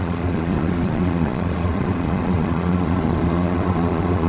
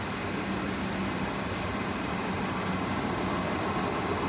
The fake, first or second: first